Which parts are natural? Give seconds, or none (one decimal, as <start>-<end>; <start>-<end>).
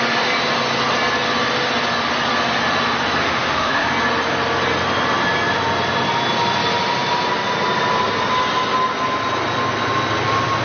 0.0-3.2; 3.9-10.6